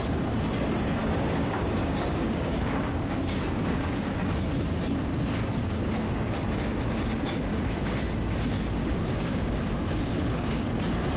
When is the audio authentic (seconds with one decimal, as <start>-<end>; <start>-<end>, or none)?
0.0-1.0; 4.1-7.5; 8.0-8.8; 10.6-11.2

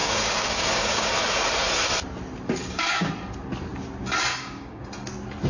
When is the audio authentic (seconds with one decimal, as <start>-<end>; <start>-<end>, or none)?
1.1-2.6; 3.1-4.3; 4.8-5.5

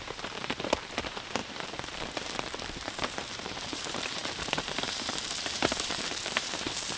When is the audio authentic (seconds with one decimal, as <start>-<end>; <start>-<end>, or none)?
none